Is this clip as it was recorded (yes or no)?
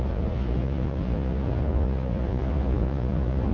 no